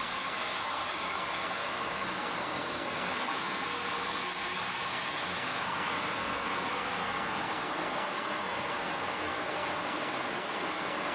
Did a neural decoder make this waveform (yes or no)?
yes